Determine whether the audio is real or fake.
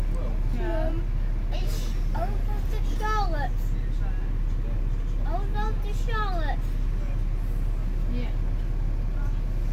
real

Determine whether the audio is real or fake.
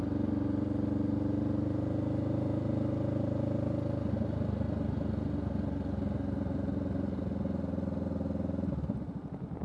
real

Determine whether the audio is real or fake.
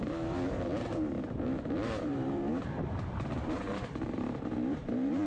fake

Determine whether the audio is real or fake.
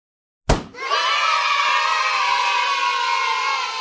real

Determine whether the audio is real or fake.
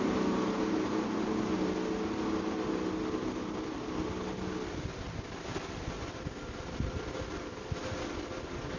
real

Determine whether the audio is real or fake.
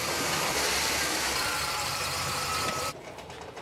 fake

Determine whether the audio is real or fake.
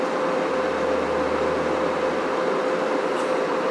fake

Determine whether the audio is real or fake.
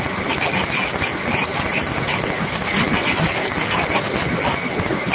real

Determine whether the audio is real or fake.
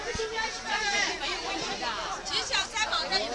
fake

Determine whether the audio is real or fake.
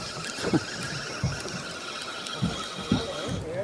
real